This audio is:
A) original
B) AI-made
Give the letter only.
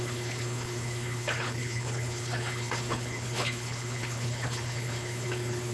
B